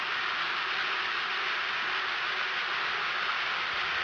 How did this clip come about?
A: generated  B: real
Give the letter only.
B